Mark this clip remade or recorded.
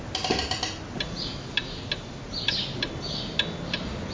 recorded